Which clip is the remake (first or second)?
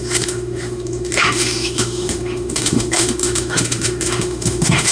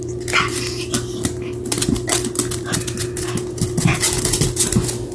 first